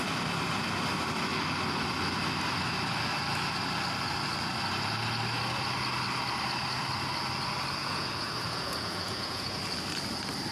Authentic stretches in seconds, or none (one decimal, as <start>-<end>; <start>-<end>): 0.0-7.8; 9.6-10.5